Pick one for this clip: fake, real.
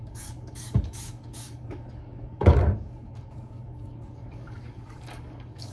fake